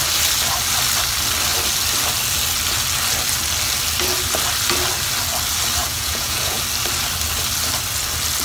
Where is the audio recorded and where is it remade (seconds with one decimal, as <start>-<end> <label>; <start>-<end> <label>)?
0.0-5.8 recorded; 5.8-6.6 remade; 6.6-8.4 recorded